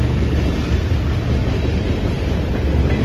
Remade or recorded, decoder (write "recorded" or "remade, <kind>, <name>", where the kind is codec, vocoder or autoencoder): recorded